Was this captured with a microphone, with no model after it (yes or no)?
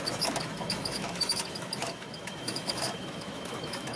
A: no